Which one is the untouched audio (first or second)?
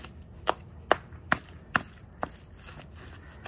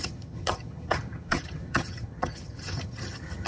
first